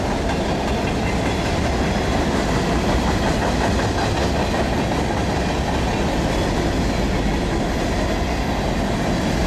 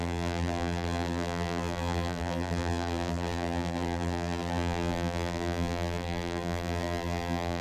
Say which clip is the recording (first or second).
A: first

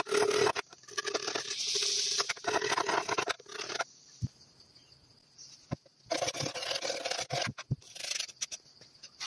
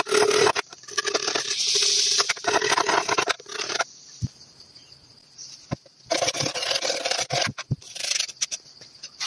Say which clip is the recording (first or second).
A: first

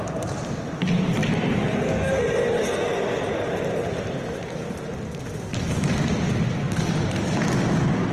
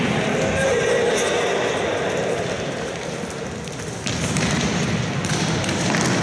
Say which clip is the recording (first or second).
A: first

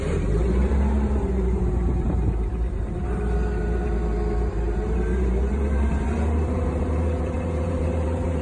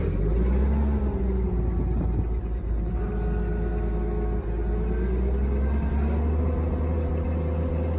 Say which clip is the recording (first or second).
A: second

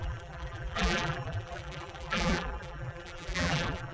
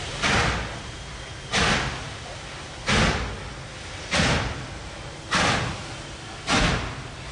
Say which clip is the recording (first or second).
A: second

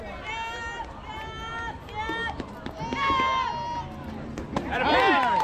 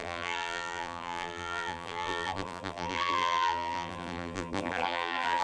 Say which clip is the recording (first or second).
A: first